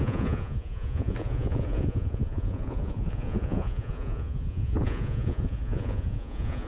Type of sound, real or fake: fake